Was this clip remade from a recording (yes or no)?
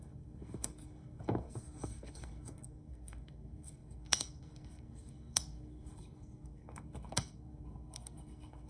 yes